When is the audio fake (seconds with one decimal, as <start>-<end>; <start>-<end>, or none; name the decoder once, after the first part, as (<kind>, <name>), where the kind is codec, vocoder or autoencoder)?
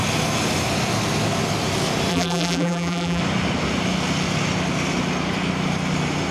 2.1-3.2 (vocoder, BigVGAN v2)